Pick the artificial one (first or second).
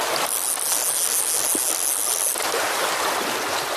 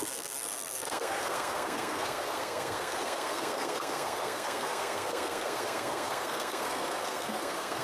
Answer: second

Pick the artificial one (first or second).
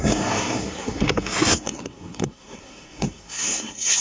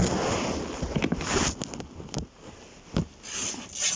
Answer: first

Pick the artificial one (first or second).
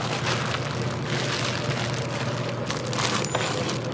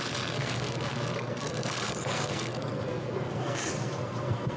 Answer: second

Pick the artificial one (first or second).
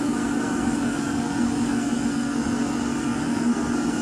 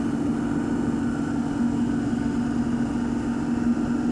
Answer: first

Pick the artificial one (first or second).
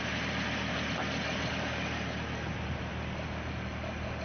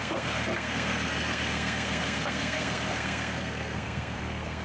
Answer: second